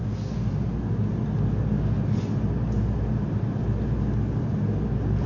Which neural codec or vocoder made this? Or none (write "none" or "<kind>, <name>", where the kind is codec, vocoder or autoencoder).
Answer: none